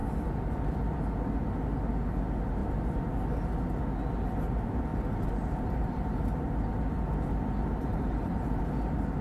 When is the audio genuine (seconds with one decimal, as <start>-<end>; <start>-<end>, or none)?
0.0-4.9; 6.7-7.6; 8.6-9.2